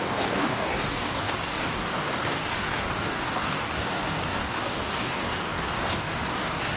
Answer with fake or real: fake